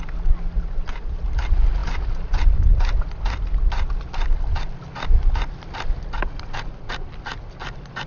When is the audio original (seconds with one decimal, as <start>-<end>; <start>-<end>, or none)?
0.0-8.1